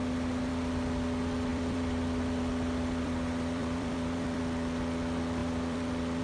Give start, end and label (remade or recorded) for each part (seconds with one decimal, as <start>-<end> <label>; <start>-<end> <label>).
0.0-1.5 recorded; 1.5-4.4 remade; 4.4-5.4 recorded; 5.4-6.2 remade